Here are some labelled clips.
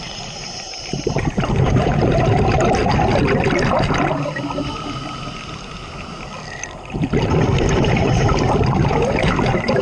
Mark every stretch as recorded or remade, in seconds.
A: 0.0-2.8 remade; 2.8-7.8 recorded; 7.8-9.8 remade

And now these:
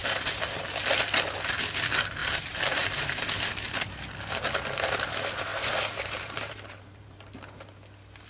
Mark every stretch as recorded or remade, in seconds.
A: 0.0-2.2 recorded; 2.2-3.3 remade; 3.3-5.5 recorded; 5.5-7.2 remade; 7.2-8.3 recorded

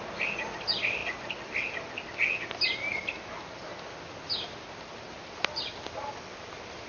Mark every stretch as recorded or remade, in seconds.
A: 0.0-6.9 recorded

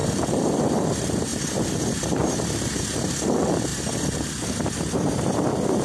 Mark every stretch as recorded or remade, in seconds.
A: 0.0-0.6 remade; 0.6-1.3 recorded; 1.3-2.0 remade; 2.0-3.7 recorded; 3.7-4.8 remade; 4.8-5.8 recorded